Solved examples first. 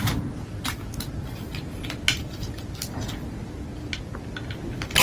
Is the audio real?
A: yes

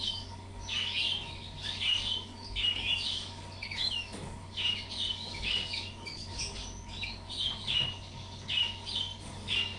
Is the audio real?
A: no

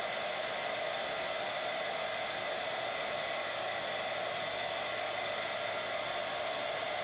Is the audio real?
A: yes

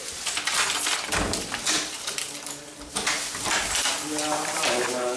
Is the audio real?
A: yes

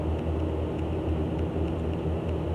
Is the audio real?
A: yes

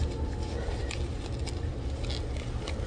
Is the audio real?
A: yes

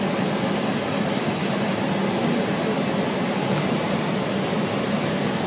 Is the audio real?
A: yes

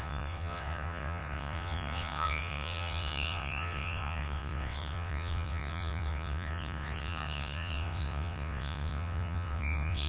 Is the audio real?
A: no